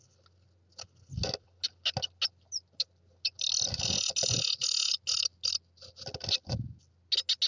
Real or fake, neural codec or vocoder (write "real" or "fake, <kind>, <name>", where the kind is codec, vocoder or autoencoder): real